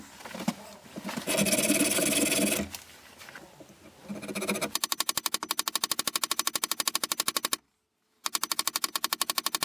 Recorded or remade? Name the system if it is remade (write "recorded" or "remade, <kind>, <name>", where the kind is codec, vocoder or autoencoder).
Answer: recorded